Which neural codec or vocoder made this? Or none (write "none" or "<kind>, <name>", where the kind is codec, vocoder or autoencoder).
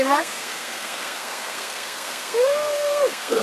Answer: codec, SNAC